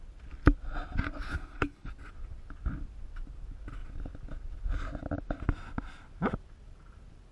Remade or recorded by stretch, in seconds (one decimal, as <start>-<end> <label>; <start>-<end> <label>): 0.0-1.3 recorded; 1.3-1.9 remade; 1.9-7.3 recorded